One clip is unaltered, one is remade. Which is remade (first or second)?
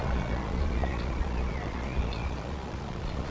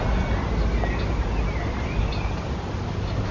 first